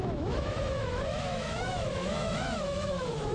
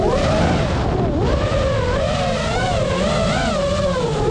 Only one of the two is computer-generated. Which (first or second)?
first